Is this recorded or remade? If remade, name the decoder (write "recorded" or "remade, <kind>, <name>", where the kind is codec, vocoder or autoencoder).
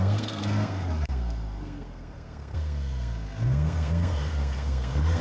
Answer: remade, codec, SNAC